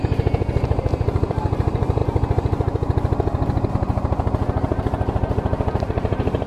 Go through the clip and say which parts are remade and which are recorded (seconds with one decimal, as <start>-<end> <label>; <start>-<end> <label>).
0.0-2.0 remade; 2.0-3.7 recorded; 3.7-6.5 remade